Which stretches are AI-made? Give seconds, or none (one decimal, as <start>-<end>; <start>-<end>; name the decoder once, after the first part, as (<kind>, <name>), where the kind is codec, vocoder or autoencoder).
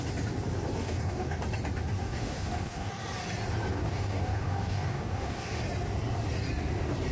0.8-1.4 (codec, DAC); 2.0-2.9; 3.7-5.6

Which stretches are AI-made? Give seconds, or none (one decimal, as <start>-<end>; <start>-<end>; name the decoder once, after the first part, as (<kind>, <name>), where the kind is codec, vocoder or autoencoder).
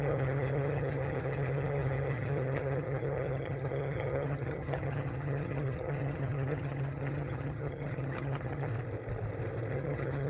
0.0-8.7 (vocoder, HiFi-GAN); 9.7-10.3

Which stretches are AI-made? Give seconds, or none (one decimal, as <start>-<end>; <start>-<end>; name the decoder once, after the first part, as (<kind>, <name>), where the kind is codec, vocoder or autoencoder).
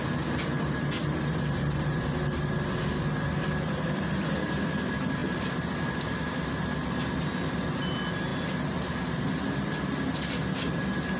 none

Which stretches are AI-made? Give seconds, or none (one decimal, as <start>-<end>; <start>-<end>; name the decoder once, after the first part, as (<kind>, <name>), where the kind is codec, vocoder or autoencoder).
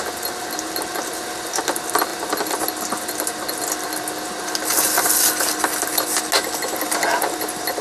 none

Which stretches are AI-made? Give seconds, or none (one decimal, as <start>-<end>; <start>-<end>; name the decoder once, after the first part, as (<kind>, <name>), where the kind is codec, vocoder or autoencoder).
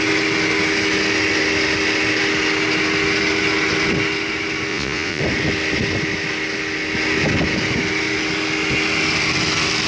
4.7-5.2 (vocoder, Vocos)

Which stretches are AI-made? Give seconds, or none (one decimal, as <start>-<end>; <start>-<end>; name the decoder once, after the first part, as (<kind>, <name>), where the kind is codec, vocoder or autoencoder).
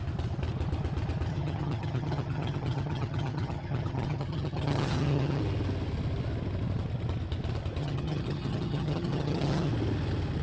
1.3-5.4 (vocoder, HiFi-GAN); 7.8-9.7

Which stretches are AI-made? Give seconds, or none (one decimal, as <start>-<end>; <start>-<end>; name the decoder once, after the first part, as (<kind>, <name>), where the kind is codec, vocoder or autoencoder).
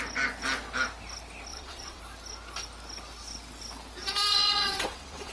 1.5-2.0 (vocoder, WaveNeXt); 4.3-5.3